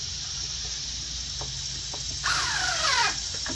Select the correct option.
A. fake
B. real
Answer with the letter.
B